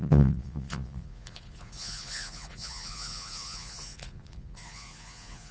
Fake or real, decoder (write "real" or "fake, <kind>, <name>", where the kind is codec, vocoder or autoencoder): fake, vocoder, Vocos